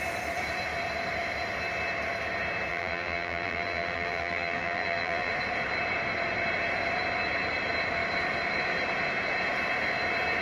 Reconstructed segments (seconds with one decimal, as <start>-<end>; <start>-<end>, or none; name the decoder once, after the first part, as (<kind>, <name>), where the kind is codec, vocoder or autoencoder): 2.7-5.3 (vocoder, BigVGAN v2)